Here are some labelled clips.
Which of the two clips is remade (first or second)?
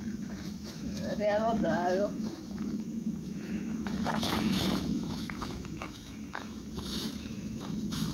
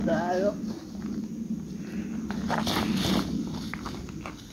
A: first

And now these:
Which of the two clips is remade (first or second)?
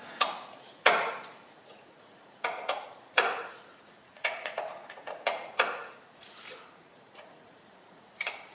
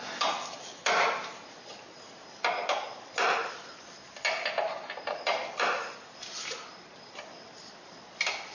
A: first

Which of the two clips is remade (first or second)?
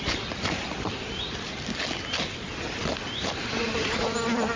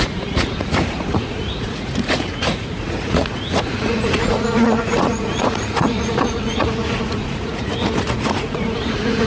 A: second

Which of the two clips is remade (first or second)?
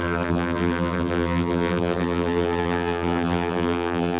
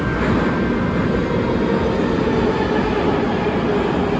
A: first